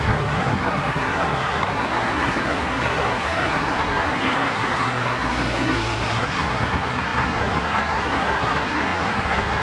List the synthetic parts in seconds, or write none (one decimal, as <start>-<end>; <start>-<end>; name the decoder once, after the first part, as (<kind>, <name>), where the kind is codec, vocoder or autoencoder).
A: 0.0-9.6 (codec, SNAC)